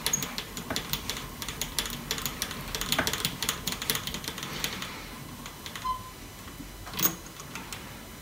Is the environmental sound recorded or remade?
recorded